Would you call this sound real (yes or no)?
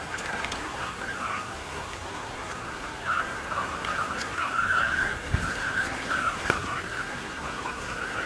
no